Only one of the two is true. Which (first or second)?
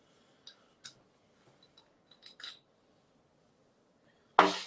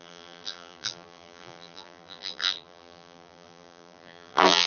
first